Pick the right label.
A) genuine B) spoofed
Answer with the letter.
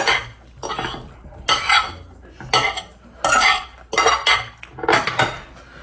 A